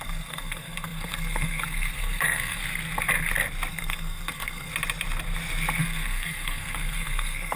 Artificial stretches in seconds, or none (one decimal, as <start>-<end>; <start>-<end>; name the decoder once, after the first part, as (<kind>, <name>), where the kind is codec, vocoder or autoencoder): 0.0-2.6 (codec, SNAC); 3.7-4.7; 5.8-7.6